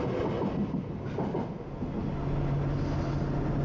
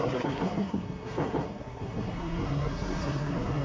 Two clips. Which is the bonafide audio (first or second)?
first